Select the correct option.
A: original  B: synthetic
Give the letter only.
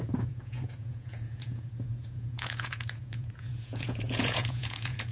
B